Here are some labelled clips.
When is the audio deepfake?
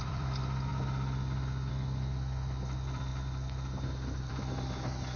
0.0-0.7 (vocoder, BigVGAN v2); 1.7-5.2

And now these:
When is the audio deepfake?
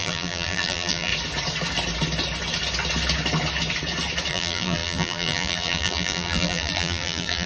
0.0-1.1 (vocoder, BigVGAN v2); 4.3-7.5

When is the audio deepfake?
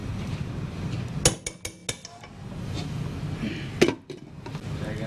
0.0-0.5 (vocoder, BigVGAN v2)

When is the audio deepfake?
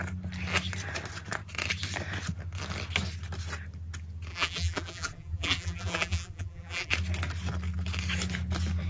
4.3-6.9 (vocoder, BigVGAN v2)